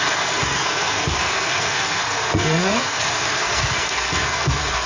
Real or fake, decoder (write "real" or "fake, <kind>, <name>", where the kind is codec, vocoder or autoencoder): fake, codec, SNAC